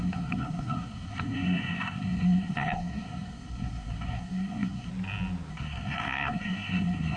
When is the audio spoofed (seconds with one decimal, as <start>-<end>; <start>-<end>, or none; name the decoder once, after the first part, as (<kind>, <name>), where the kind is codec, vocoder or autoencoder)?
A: 0.0-4.9 (codec, SNAC); 5.5-7.2